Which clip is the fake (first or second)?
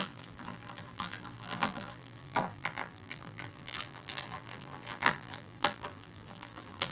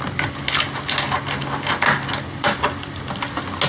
first